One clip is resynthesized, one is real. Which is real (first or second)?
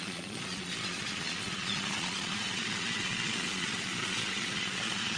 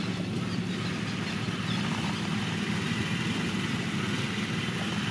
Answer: second